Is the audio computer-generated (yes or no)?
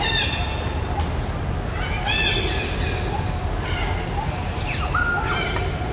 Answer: no